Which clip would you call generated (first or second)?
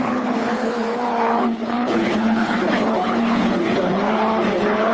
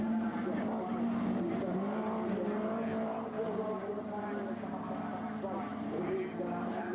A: first